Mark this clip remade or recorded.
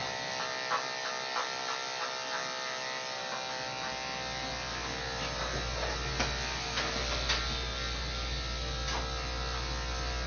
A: recorded